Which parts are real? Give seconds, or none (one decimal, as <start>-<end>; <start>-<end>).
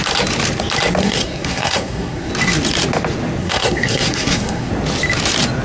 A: 0.0-1.0; 2.3-3.4; 4.7-5.6